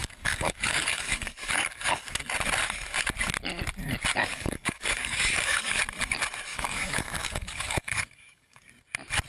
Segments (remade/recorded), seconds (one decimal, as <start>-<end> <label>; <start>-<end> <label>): 0.0-2.2 remade; 2.2-4.2 recorded; 4.2-5.8 remade; 5.8-6.5 recorded; 6.5-8.7 remade; 8.7-9.3 recorded